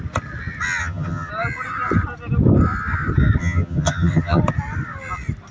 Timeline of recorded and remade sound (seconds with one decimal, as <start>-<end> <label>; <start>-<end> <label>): 0.0-0.8 recorded; 0.8-1.3 remade; 1.3-3.4 recorded; 3.4-4.4 remade; 4.4-5.5 recorded